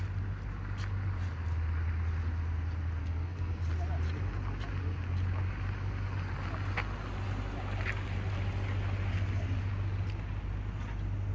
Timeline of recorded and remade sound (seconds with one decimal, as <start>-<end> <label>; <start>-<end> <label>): 0.0-3.0 recorded; 3.0-3.6 remade; 3.6-11.3 recorded